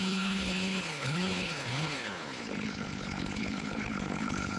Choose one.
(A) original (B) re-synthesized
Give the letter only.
B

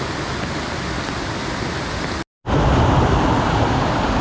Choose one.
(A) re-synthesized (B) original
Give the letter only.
B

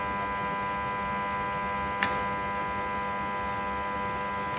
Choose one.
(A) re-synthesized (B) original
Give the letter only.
B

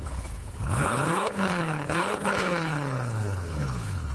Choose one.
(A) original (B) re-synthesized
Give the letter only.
B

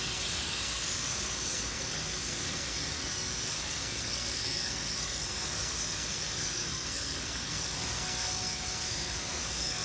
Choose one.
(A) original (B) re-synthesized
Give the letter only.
B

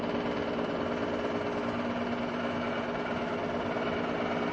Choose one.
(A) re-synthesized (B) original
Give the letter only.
B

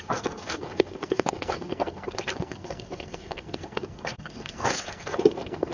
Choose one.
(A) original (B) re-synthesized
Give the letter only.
B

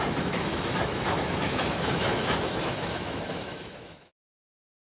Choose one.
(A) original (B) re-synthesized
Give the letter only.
B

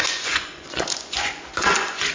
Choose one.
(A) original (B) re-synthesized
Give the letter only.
B